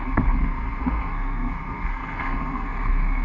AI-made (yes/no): yes